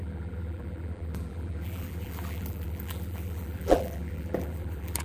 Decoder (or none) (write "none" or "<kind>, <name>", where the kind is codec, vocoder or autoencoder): vocoder, BigVGAN v2